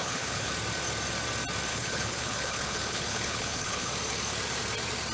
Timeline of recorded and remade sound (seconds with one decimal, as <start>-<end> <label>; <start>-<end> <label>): 0.0-0.5 remade; 0.5-1.7 recorded; 1.7-3.9 remade; 3.9-5.1 recorded